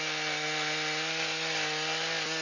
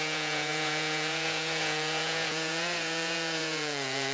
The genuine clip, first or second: first